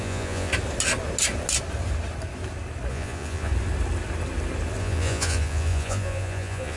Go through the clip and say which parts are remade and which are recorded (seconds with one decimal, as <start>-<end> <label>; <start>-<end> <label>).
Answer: 0.0-0.5 remade; 0.5-2.9 recorded; 2.9-3.5 remade; 3.5-4.8 recorded; 4.8-6.8 remade